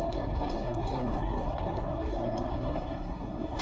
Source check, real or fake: fake